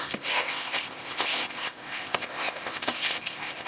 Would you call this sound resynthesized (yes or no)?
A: yes